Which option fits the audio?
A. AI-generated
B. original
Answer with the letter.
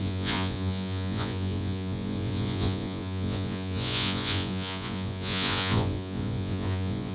A